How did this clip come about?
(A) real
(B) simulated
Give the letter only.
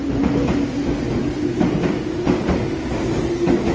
A